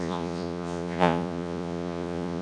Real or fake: fake